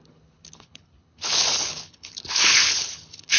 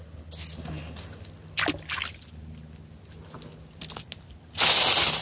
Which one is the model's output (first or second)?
first